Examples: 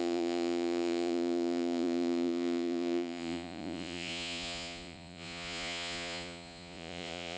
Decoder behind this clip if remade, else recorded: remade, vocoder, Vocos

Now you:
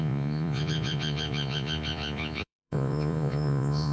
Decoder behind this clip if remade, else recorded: remade, vocoder, Vocos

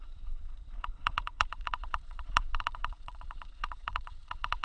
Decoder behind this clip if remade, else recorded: remade, vocoder, Vocos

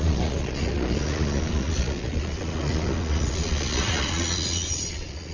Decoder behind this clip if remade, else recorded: remade, vocoder, Vocos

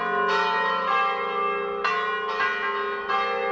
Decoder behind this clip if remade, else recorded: recorded